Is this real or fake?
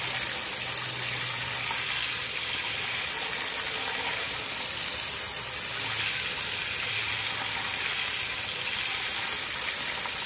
real